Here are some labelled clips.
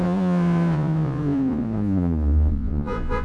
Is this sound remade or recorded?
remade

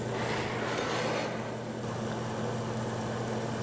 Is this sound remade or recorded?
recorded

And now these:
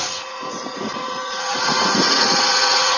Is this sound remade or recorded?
remade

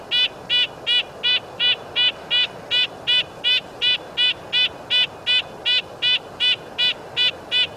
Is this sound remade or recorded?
recorded